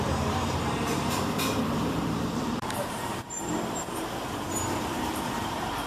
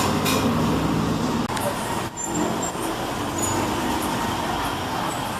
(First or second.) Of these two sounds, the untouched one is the second